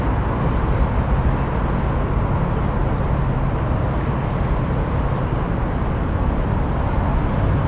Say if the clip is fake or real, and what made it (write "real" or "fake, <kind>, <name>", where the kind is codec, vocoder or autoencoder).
real